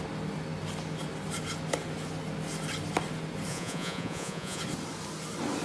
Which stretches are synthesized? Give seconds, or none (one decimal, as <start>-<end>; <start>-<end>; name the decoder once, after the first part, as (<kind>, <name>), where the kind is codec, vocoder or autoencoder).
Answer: 3.5-4.6 (vocoder, Vocos)